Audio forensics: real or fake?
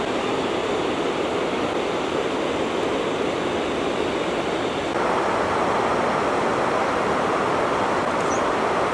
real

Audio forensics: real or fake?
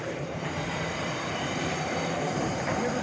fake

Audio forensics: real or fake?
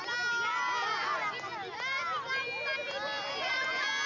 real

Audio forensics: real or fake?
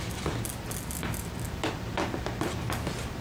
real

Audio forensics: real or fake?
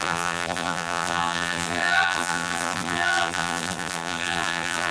fake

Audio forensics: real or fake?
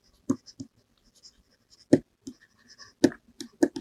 real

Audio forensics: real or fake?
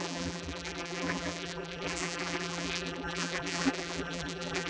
fake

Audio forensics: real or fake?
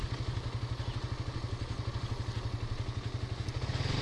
real